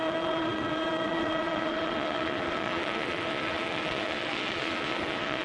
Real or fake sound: fake